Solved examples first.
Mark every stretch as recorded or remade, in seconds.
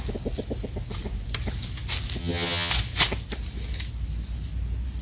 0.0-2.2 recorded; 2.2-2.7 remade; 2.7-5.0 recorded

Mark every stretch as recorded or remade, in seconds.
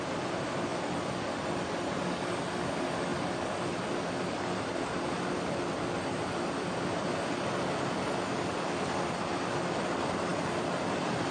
0.0-0.7 recorded; 0.7-1.5 remade; 1.5-3.1 recorded; 3.1-7.1 remade; 7.1-10.3 recorded; 10.3-11.3 remade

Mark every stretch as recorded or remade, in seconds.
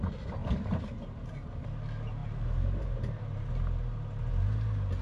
0.0-0.4 recorded; 0.4-1.3 remade; 1.3-2.2 recorded; 2.2-3.5 remade; 3.5-5.0 recorded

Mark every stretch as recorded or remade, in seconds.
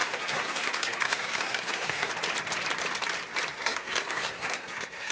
0.0-2.1 remade; 2.1-3.5 recorded; 3.5-5.1 remade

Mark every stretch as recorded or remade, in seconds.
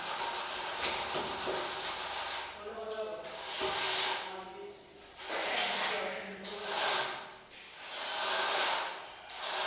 0.0-9.7 recorded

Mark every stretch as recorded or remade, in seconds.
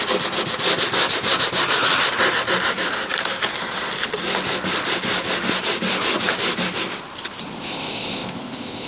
0.0-7.7 recorded; 7.7-8.9 remade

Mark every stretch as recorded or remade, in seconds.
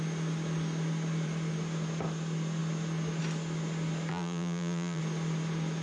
0.0-4.1 recorded; 4.1-5.0 remade; 5.0-5.8 recorded